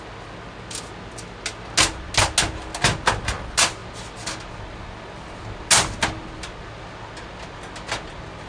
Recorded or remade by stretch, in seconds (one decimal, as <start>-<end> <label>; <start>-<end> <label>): 0.0-8.5 recorded